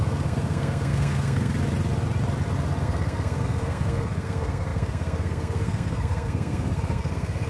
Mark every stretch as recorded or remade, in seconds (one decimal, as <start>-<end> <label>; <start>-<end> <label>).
0.0-1.5 remade; 1.5-2.8 recorded; 2.8-7.5 remade